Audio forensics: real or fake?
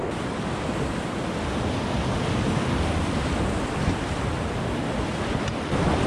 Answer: real